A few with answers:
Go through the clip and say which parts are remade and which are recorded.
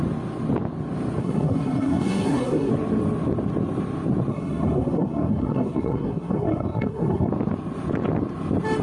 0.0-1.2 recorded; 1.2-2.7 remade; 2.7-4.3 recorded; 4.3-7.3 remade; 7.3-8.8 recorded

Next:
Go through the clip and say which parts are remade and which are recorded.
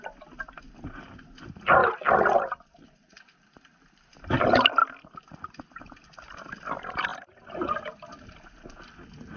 0.0-1.8 recorded; 1.8-4.1 remade; 4.1-9.4 recorded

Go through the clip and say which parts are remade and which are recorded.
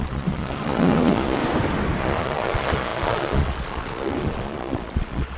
0.0-1.4 remade; 1.4-2.0 recorded; 2.0-5.4 remade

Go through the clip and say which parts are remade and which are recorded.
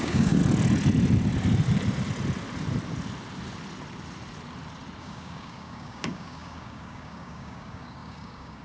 0.0-0.4 remade; 0.4-5.0 recorded; 5.0-8.6 remade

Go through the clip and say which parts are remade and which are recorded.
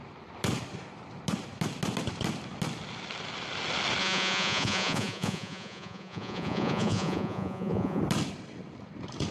0.0-4.0 recorded; 4.0-8.0 remade; 8.0-9.3 recorded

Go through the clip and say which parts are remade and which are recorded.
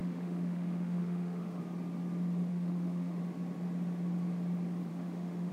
0.0-1.6 remade; 1.6-2.5 recorded; 2.5-3.2 remade; 3.2-4.9 recorded; 4.9-5.5 remade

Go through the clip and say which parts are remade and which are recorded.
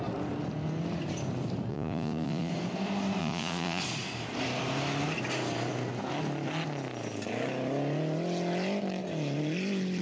0.0-1.7 recorded; 1.7-2.5 remade; 2.5-3.2 recorded; 3.2-3.8 remade; 3.8-10.0 recorded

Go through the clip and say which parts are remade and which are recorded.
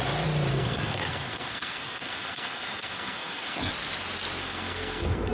0.0-0.5 recorded; 0.5-3.7 remade; 3.7-4.4 recorded; 4.4-5.3 remade